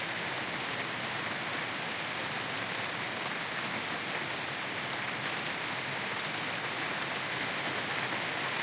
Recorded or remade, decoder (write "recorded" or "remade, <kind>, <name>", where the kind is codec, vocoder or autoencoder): recorded